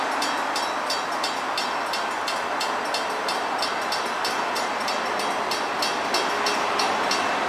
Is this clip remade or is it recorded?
recorded